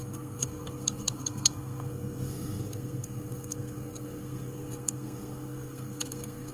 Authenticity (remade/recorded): remade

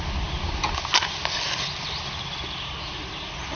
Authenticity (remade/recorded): recorded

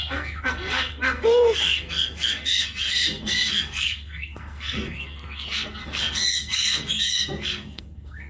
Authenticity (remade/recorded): remade